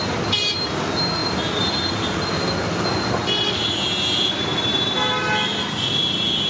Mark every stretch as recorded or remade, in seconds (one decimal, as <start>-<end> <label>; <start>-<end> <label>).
0.0-6.5 recorded